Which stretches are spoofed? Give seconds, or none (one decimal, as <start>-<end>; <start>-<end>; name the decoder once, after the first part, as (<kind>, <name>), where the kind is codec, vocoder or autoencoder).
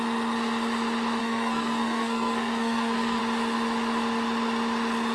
1.2-3.2 (codec, SNAC)